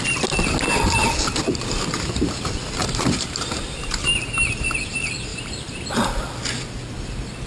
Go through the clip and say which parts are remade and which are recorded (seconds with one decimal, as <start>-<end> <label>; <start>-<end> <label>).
0.0-2.8 recorded; 2.8-4.3 remade; 4.3-5.3 recorded; 5.3-5.8 remade; 5.8-7.5 recorded